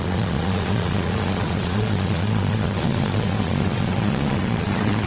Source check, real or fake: fake